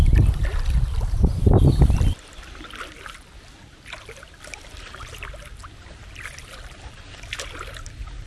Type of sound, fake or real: real